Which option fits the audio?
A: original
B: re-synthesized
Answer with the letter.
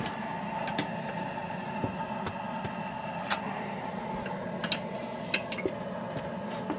A